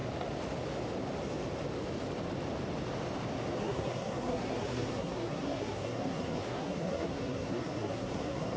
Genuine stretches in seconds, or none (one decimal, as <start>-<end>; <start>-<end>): 0.0-3.6